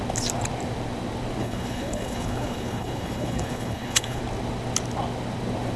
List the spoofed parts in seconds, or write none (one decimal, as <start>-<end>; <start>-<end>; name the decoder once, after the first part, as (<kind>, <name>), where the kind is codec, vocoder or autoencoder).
1.4-4.2 (codec, HILCodec)